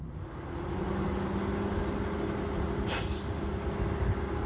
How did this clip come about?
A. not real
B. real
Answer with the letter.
B